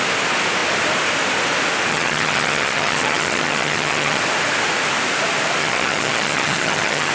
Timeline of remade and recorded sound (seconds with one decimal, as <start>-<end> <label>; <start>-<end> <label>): 0.0-1.9 recorded; 1.9-4.2 remade; 4.2-5.6 recorded; 5.6-7.1 remade